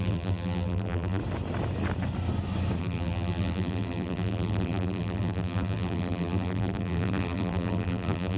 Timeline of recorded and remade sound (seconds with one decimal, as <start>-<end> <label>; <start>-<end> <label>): 0.0-1.2 remade; 1.2-2.8 recorded; 2.8-8.4 remade